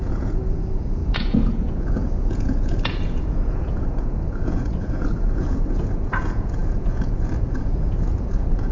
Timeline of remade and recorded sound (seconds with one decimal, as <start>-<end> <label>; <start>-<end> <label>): 0.0-8.7 remade